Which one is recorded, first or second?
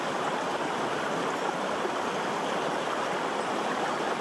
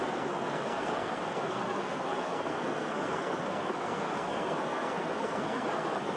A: first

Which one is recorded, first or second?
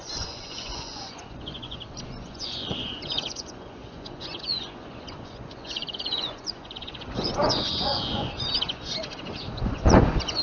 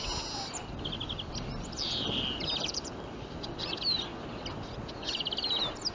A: second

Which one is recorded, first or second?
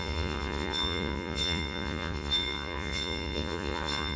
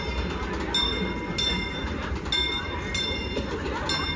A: second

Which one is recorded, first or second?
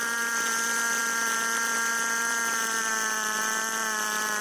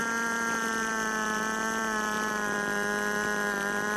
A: second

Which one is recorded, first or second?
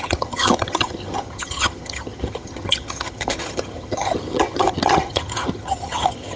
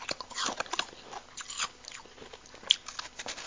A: second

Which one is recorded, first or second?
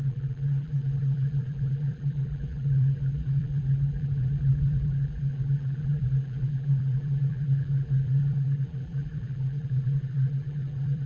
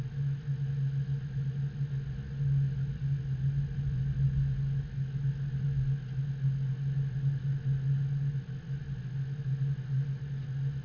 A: second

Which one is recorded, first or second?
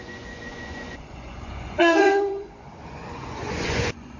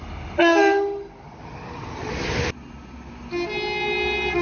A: second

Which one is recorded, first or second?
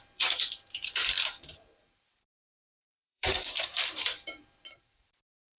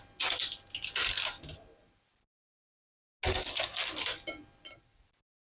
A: second